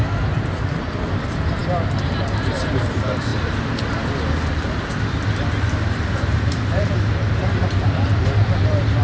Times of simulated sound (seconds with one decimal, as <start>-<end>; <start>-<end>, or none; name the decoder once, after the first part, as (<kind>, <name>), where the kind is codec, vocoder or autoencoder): 0.0-3.3 (vocoder, BigVGAN v2); 5.6-9.0